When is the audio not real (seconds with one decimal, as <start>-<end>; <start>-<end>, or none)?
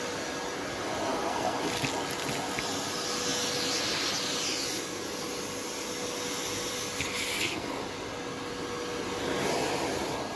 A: 1.1-1.6; 7.3-7.8